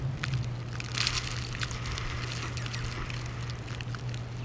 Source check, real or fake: real